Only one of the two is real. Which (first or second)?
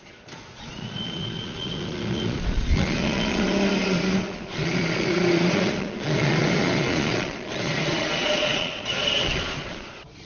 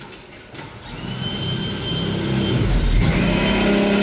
second